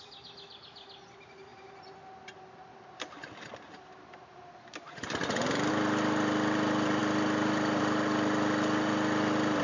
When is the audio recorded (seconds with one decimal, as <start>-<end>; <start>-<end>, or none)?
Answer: 0.0-9.6